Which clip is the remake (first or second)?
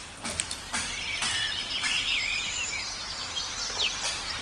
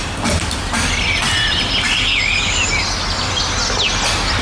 first